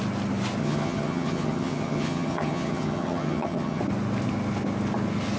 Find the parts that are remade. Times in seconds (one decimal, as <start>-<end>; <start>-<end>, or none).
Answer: 0.6-3.8